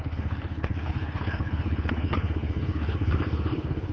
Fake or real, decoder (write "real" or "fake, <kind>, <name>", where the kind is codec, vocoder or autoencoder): fake, codec, HILCodec